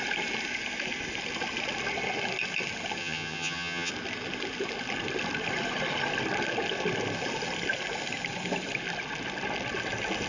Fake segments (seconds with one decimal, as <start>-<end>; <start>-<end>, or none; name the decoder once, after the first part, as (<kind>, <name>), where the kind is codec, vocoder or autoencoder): 3.0-3.9 (vocoder, HiFi-GAN)